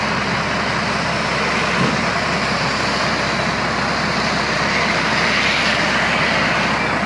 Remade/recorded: recorded